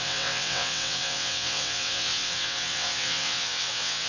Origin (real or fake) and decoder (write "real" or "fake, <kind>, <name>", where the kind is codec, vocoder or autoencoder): fake, vocoder, WaveNeXt